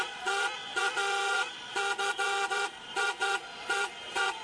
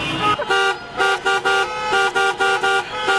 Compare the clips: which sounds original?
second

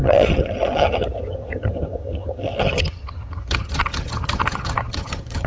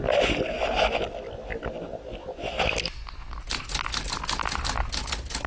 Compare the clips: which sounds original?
second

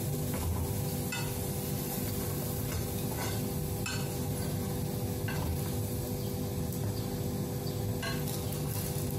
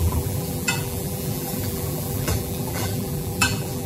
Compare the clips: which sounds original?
first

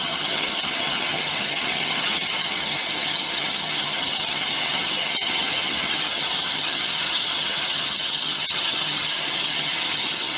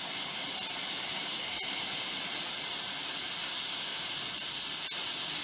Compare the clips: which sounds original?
second